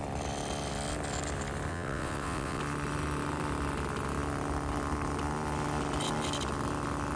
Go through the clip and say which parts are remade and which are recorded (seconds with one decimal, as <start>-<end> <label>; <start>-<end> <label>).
0.0-1.7 recorded; 1.7-2.6 remade; 2.6-7.2 recorded